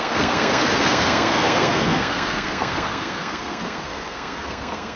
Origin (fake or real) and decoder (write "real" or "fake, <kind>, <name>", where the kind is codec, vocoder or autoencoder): fake, codec, SNAC